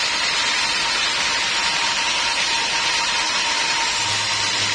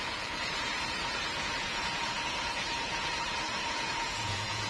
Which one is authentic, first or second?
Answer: first